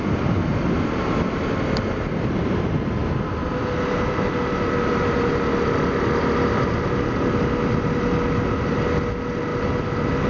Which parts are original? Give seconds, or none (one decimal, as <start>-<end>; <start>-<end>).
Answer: 0.0-10.3

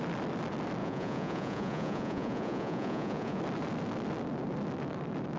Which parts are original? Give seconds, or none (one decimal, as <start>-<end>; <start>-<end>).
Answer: 0.0-0.8; 3.4-5.4

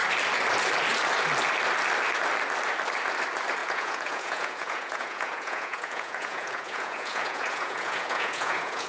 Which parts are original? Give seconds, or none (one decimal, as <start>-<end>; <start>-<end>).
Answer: 0.0-3.6